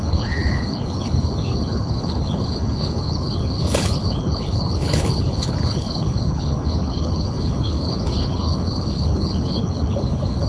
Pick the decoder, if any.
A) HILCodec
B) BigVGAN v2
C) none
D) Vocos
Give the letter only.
A